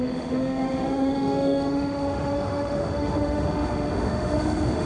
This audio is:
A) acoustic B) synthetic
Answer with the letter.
B